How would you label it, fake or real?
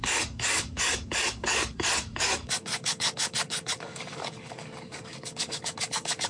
fake